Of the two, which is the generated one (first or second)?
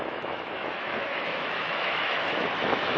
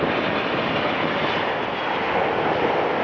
first